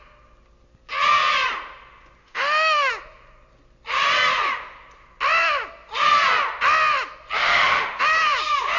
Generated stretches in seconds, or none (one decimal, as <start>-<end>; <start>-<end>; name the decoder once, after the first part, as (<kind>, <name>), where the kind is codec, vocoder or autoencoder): 2.2-2.9 (autoencoder, DAC-VAE); 7.4-8.0